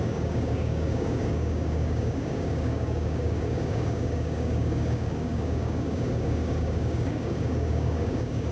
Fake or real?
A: fake